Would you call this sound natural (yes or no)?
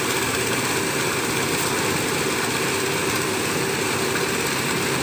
yes